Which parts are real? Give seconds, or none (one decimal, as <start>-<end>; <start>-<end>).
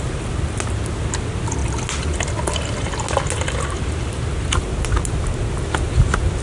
0.0-6.4